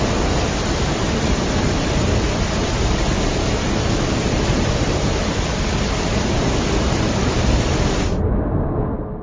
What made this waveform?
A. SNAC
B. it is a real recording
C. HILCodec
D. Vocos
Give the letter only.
B